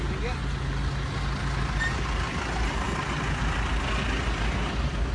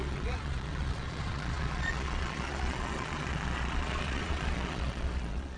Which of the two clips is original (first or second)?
first